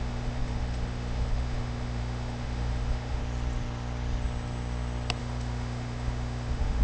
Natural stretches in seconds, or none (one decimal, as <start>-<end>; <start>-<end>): 3.2-5.2

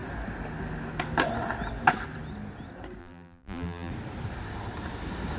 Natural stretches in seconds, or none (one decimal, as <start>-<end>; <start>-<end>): 0.0-3.0; 3.9-5.4